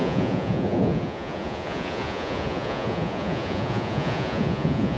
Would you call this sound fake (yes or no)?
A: yes